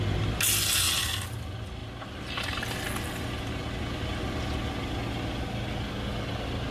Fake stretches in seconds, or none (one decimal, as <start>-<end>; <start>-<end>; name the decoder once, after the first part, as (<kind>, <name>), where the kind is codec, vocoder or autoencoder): none